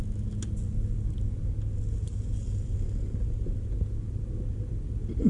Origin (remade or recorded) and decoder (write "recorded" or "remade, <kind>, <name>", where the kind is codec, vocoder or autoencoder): recorded